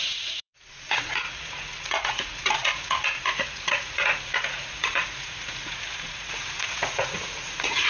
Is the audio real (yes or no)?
no